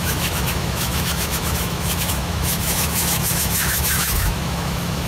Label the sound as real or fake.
fake